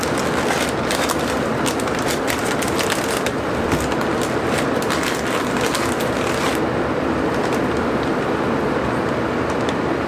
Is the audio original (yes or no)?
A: yes